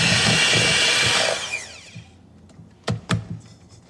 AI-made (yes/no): no